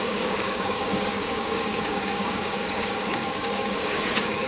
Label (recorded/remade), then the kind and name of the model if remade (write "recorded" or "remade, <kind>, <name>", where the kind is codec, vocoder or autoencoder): remade, codec, DAC